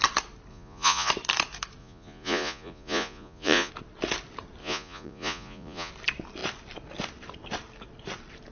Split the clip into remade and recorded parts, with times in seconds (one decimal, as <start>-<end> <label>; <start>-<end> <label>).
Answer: 0.0-0.5 recorded; 0.5-1.1 remade; 1.1-1.8 recorded; 1.8-3.7 remade; 3.7-4.6 recorded; 4.6-5.9 remade; 5.9-8.5 recorded